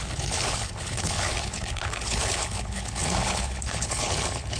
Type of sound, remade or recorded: remade